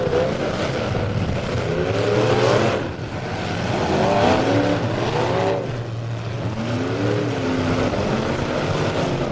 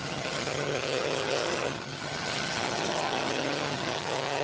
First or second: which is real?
first